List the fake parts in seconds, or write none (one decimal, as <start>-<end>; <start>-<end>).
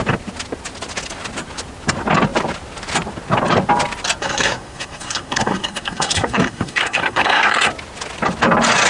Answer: 4.2-7.7